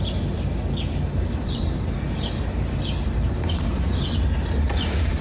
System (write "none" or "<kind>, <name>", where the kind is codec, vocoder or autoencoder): vocoder, BigVGAN v2